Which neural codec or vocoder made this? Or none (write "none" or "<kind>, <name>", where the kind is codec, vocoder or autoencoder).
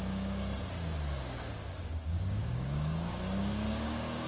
codec, DAC